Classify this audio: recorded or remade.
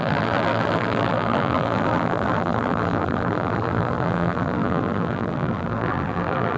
remade